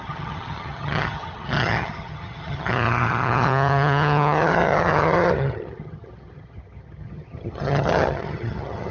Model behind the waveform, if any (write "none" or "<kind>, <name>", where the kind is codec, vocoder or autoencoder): vocoder, HiFi-GAN